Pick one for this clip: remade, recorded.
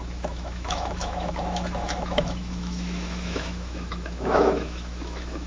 remade